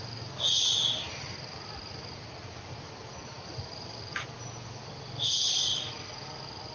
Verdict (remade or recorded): recorded